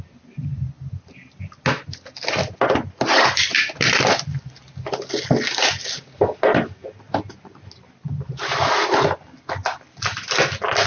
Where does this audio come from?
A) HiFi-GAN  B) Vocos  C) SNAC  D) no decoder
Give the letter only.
D